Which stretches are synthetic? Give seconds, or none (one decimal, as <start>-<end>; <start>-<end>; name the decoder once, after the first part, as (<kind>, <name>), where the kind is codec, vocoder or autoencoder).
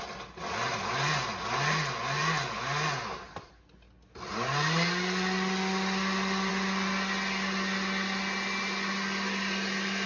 none